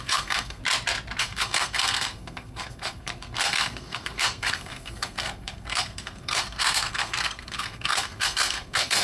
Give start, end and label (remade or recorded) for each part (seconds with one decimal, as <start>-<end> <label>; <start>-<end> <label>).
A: 0.0-0.6 remade; 0.6-1.2 recorded; 1.2-9.0 remade